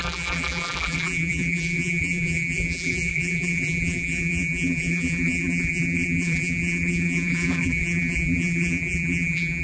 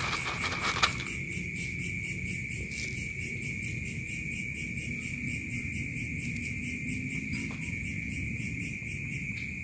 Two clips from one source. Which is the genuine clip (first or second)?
second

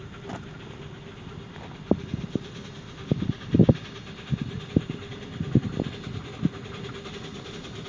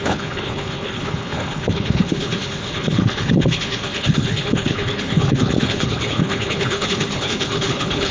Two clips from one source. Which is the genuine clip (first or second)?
first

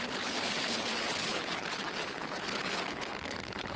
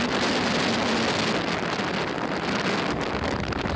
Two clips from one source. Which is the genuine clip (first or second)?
second